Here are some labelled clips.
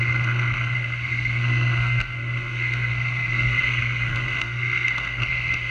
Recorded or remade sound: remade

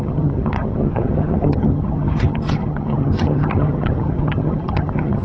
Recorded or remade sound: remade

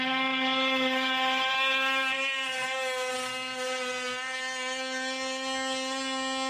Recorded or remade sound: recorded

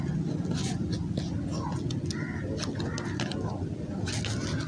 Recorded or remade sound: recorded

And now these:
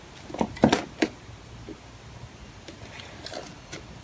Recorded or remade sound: recorded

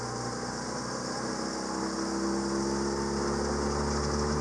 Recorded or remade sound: recorded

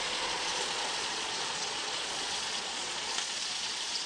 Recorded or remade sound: remade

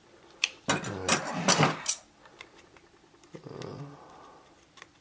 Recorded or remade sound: recorded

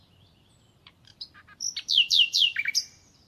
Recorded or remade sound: remade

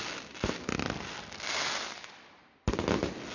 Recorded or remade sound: recorded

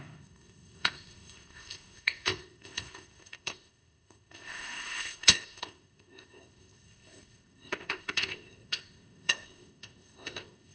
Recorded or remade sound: remade